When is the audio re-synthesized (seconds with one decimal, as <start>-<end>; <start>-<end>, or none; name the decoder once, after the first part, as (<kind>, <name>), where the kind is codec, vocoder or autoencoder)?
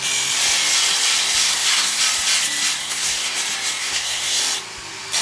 1.4-2.0 (codec, SNAC); 2.8-3.4; 3.8-4.4